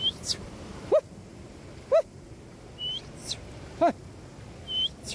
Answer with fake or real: real